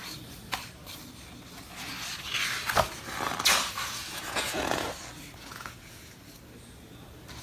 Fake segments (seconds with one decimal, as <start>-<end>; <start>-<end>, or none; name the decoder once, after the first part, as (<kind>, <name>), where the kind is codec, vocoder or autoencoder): 4.0-4.9 (vocoder, Vocos); 5.4-6.2

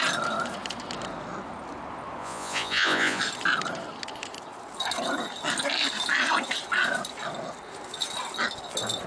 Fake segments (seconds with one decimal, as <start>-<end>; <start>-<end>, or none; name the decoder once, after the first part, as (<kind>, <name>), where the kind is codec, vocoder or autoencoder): 2.2-3.2 (vocoder, Vocos)

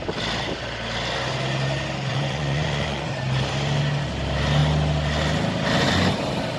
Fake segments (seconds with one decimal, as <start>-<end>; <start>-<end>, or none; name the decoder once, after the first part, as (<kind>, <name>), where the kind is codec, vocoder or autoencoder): 2.1-3.1 (vocoder, Vocos)